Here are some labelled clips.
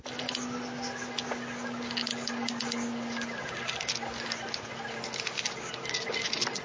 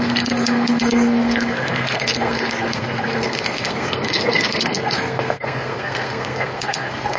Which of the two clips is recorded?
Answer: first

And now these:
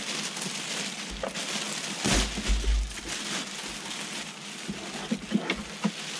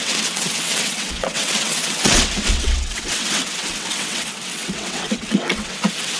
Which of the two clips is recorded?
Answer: first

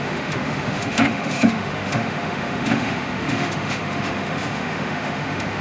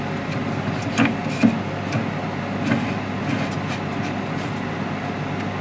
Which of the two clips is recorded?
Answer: second